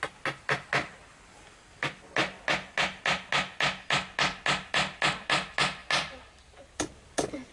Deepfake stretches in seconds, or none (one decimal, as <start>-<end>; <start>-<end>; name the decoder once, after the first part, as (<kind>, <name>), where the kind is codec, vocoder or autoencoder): none